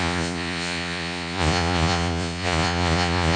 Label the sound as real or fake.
fake